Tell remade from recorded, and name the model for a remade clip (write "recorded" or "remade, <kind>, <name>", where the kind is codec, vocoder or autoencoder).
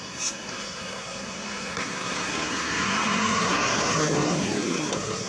remade, codec, SNAC